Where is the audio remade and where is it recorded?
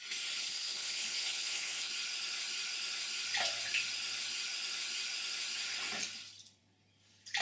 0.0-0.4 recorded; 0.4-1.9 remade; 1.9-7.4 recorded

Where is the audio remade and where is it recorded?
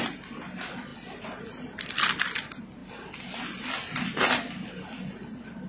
0.0-5.7 recorded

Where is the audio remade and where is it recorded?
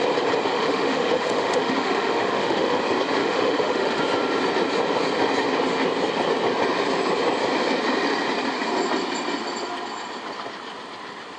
0.0-0.5 recorded; 0.5-2.8 remade; 2.8-3.2 recorded; 3.2-4.0 remade; 4.0-11.4 recorded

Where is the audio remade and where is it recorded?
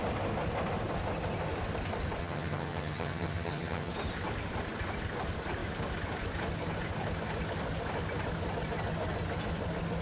0.0-2.2 recorded; 2.2-3.9 remade; 3.9-10.0 recorded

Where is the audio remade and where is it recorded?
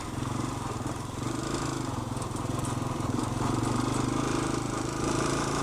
0.0-1.4 remade; 1.4-2.0 recorded; 2.0-3.6 remade; 3.6-4.2 recorded; 4.2-5.6 remade